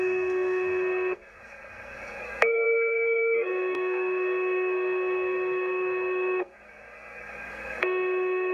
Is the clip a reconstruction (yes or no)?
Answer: yes